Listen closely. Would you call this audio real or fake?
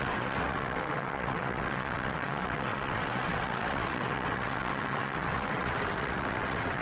fake